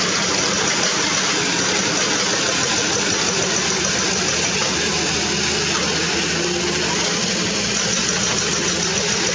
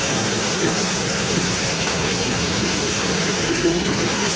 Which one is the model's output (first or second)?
second